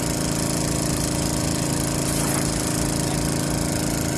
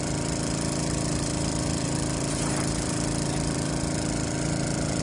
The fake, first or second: second